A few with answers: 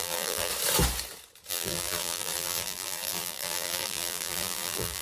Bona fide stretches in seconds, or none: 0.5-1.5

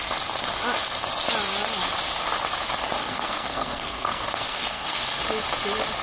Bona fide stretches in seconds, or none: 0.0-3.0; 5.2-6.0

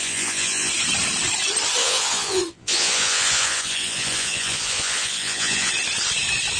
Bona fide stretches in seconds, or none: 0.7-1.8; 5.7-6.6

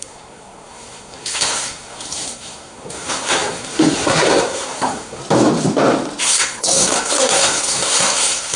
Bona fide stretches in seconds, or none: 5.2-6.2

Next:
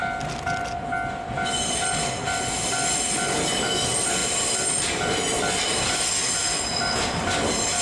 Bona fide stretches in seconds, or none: 0.0-1.7; 6.4-7.0